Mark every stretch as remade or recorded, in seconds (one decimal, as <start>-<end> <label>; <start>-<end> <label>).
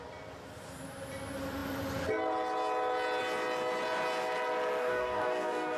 0.0-4.8 recorded; 4.8-5.8 remade